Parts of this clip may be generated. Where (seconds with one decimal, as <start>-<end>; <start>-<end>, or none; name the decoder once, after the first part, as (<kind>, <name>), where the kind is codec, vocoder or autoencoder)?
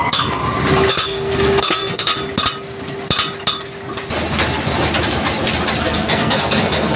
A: 0.0-0.4 (codec, SNAC); 0.9-2.1; 5.8-7.0